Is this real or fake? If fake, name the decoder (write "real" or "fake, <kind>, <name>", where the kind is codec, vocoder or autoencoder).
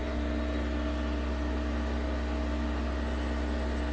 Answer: real